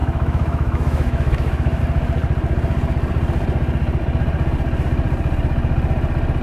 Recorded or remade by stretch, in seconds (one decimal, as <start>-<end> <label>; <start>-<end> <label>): 0.0-1.8 remade; 1.8-6.4 recorded